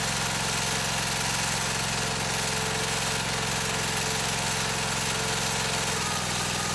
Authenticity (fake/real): real